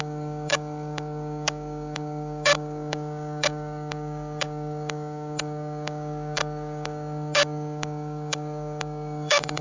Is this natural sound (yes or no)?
no